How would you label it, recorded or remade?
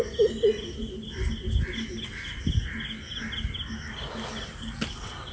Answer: recorded